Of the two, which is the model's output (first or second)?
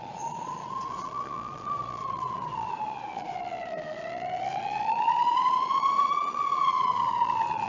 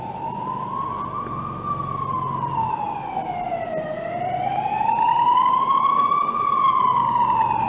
first